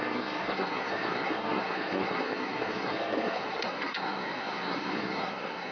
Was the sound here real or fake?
fake